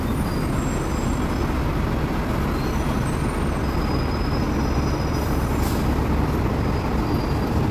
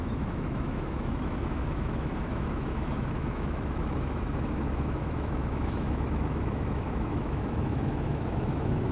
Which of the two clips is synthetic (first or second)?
second